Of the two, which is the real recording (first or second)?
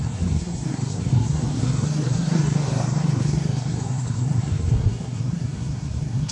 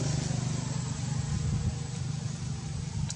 second